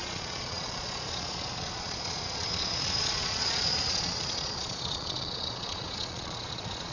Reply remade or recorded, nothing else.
remade